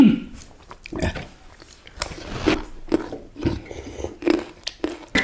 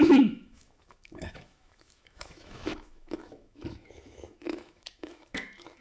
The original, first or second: first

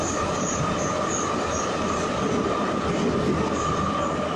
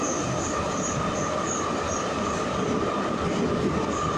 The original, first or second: first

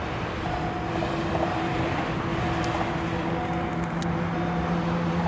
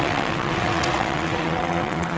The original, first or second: first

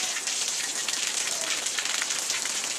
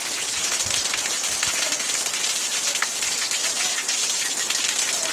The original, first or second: second